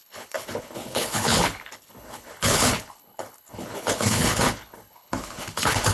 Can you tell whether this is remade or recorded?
remade